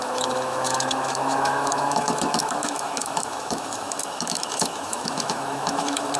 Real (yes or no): no